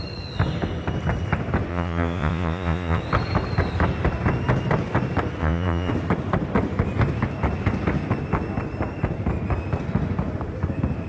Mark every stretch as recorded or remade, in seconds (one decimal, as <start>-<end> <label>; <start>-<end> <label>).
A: 0.0-1.7 recorded; 1.7-3.0 remade; 3.0-5.4 recorded; 5.4-5.9 remade; 5.9-11.1 recorded